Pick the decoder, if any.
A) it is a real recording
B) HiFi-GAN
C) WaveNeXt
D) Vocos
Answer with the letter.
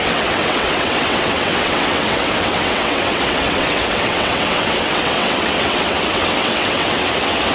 C